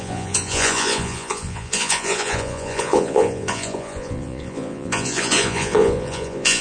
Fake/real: fake